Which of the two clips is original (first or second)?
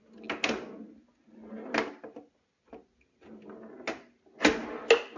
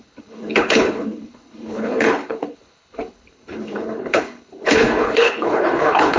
first